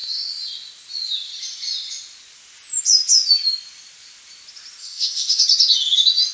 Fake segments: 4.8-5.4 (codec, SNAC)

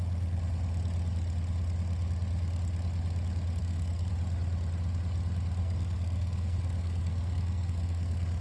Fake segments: 3.6-4.1 (codec, SNAC); 5.6-8.4

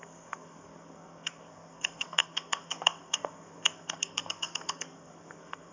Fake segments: 0.0-5.7 (codec, SNAC)